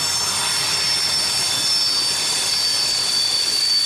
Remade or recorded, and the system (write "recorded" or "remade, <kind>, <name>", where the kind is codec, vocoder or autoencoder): recorded